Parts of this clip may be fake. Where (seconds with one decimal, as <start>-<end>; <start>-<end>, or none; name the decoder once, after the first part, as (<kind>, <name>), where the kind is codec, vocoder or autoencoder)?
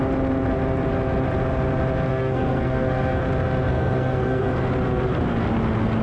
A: 2.1-3.2 (codec, SNAC); 3.7-4.7